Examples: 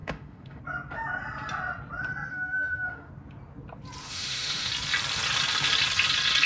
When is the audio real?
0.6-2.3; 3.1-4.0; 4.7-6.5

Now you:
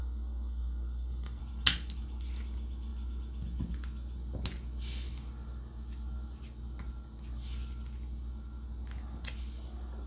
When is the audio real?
1.4-10.1

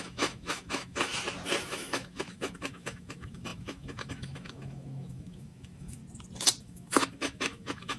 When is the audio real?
1.1-1.7; 6.0-6.6

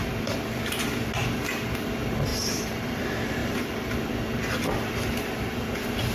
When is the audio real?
0.0-2.3; 3.0-3.4; 3.9-6.1

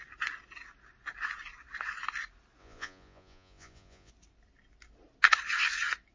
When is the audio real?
0.0-2.6; 4.1-6.1